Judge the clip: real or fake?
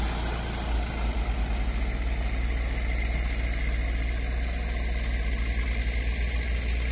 real